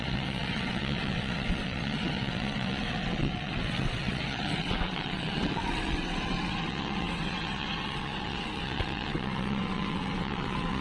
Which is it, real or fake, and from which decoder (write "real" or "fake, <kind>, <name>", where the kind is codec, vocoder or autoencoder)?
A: fake, vocoder, WaveNeXt